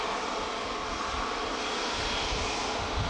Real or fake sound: real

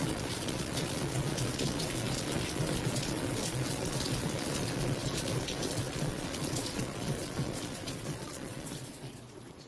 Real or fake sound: fake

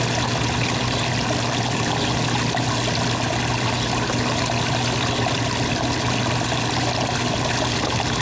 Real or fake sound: real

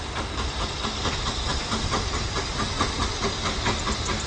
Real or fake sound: real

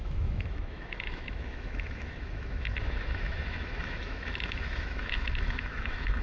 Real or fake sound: fake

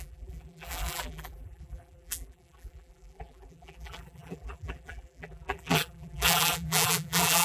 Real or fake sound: fake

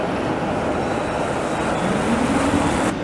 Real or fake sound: real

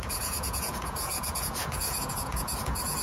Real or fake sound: fake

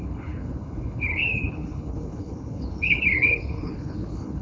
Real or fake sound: fake